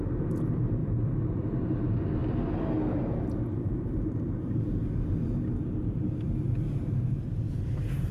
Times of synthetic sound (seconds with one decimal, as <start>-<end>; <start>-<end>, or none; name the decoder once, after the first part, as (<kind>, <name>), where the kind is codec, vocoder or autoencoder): 0.8-1.8 (vocoder, BigVGAN v2); 3.5-4.6